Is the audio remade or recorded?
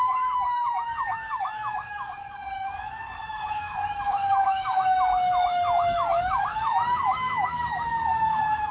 remade